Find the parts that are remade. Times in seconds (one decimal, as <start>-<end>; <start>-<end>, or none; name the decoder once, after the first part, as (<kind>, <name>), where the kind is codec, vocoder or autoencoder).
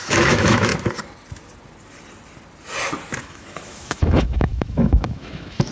0.0-0.7 (autoencoder, DAC-VAE); 3.2-5.7